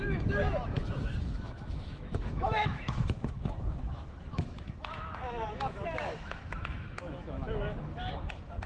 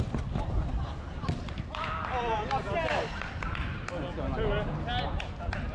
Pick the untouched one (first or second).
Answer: second